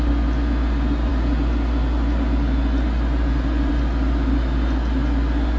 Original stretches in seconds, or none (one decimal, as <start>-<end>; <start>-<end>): 0.0-5.6